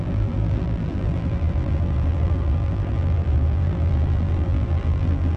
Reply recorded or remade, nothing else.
remade